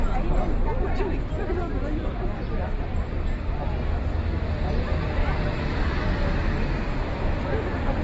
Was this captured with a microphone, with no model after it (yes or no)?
no